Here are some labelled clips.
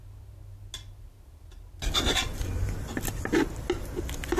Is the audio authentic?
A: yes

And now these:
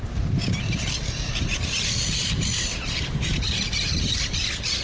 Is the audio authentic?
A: no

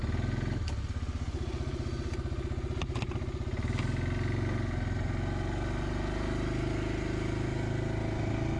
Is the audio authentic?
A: yes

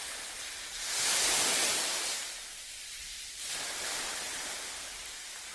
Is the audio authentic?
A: no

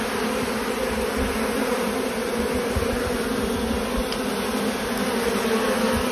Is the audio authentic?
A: yes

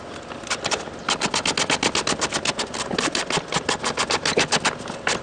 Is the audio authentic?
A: yes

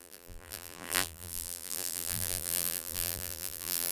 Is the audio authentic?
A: no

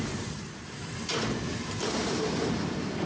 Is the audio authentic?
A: no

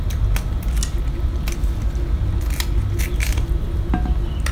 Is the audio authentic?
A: yes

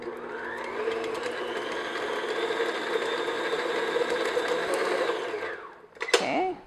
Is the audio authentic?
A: yes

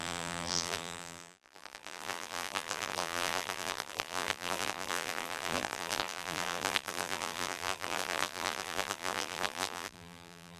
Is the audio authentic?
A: no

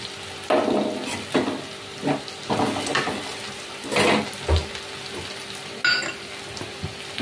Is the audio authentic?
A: yes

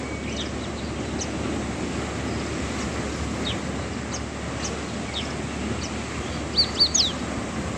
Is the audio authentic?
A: yes